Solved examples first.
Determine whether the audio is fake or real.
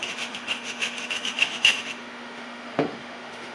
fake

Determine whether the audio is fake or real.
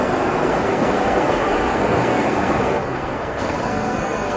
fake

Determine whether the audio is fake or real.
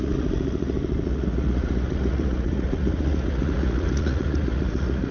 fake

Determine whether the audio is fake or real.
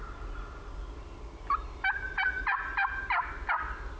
real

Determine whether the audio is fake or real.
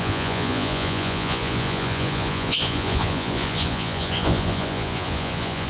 fake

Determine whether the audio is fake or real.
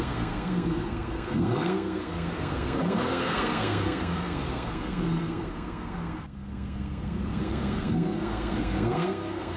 fake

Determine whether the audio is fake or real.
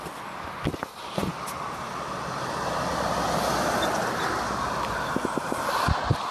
real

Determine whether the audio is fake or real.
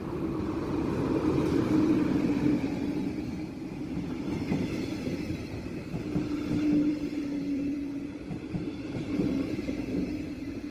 fake